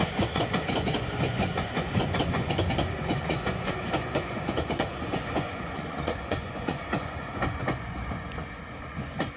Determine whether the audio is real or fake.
fake